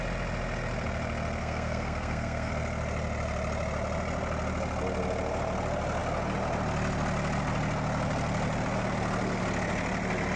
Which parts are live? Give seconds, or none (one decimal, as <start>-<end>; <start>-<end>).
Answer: 0.0-1.4; 2.5-10.4